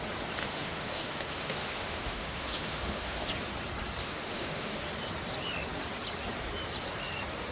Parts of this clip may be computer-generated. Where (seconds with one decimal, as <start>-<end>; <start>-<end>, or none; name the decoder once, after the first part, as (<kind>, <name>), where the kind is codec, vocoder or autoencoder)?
0.4-3.3 (autoencoder, DAC-VAE); 4.0-4.8